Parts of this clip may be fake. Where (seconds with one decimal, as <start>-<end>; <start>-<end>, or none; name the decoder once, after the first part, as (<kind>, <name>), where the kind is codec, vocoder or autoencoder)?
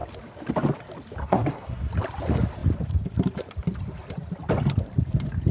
1.2-1.9 (codec, SNAC)